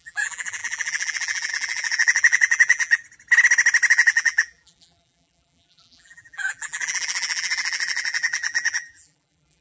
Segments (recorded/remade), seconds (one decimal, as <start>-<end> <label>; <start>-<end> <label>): 0.0-3.0 remade; 3.0-3.9 recorded; 3.9-9.6 remade